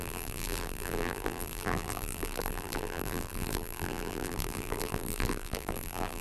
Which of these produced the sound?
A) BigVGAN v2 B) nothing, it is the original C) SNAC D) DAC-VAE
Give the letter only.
A